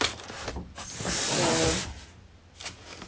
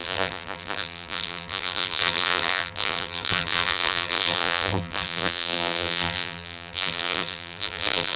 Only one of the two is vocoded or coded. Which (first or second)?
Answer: second